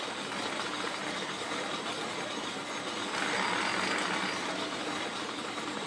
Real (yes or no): yes